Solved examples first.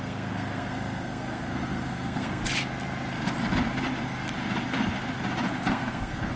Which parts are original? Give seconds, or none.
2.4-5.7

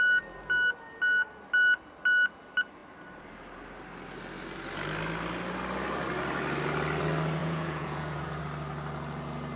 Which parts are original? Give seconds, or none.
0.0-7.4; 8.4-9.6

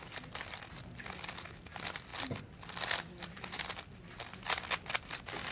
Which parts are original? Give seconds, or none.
0.0-5.5